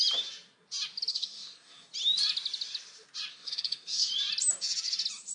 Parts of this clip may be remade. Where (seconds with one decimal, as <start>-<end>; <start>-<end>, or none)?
1.1-1.9; 3.3-4.1